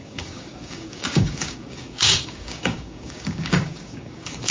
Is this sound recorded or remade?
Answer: remade